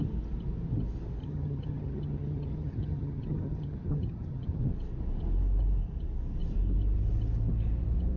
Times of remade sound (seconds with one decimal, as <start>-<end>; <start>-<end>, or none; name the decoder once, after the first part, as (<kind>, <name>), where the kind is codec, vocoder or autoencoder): 1.2-4.6 (vocoder, HiFi-GAN)